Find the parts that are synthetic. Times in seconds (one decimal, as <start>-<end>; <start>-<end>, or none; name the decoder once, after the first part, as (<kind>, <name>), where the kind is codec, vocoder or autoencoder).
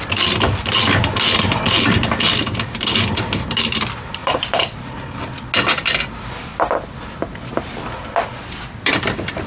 4.2-5.2 (vocoder, BigVGAN v2); 6.5-7.8; 8.3-9.0